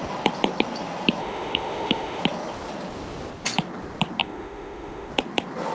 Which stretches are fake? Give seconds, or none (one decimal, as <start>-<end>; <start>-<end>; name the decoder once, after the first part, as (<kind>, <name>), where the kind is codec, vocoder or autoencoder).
1.2-2.2 (autoencoder, DAC-VAE); 4.2-5.1